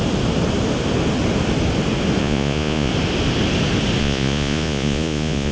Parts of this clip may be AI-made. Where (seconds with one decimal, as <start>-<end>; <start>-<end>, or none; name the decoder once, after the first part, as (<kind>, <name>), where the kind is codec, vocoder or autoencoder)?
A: 2.2-2.9 (vocoder, Vocos); 4.0-5.5